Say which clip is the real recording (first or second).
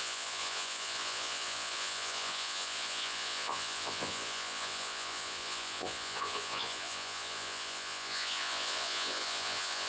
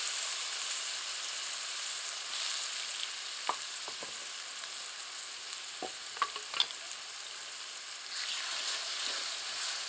second